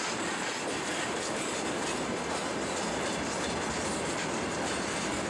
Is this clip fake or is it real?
real